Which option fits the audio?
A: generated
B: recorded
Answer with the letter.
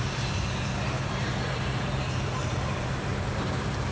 A